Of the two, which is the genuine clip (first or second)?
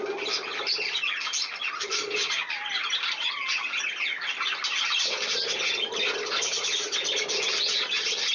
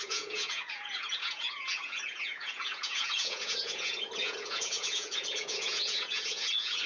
first